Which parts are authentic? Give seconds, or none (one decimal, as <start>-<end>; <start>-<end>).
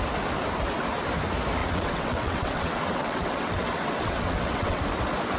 0.0-1.6; 4.8-5.4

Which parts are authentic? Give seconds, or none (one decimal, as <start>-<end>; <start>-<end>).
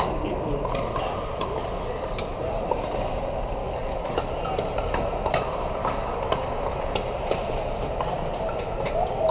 0.0-1.6; 2.2-3.6; 4.3-5.8; 6.4-9.3